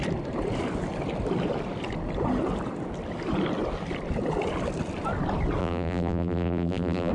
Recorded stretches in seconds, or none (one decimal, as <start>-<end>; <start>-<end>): 0.0-5.6